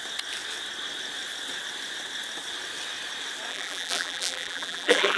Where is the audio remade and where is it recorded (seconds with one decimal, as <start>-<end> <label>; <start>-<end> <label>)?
0.0-3.5 recorded; 3.5-5.2 remade